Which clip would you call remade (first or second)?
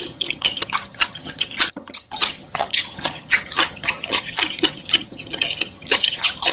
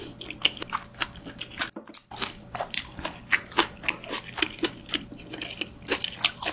first